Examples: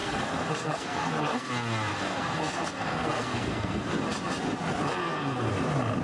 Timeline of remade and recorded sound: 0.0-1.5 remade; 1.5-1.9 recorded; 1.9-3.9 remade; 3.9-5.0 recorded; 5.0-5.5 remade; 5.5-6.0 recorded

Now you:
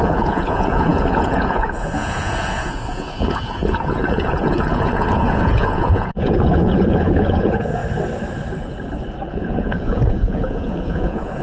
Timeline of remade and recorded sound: 0.0-7.8 remade; 7.8-9.3 recorded; 9.3-11.4 remade

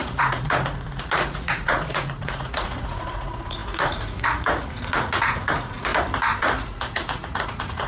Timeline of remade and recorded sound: 0.0-5.9 remade; 5.9-6.4 recorded; 6.4-7.9 remade

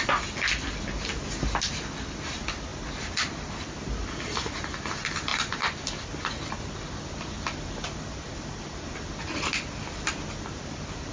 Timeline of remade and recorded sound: 0.0-11.1 recorded

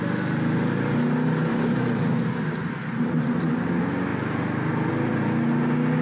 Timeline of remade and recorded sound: 0.0-6.0 recorded

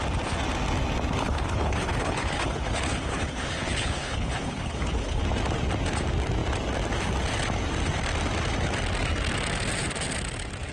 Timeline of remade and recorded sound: 0.0-1.2 recorded; 1.2-5.2 remade; 5.2-10.7 recorded

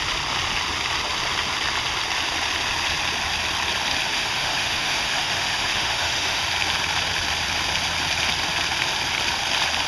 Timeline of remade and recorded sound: 0.0-4.1 recorded; 4.1-6.4 remade; 6.4-9.9 recorded